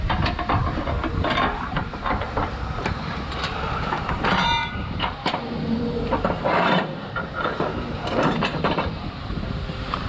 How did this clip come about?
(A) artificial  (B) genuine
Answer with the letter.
A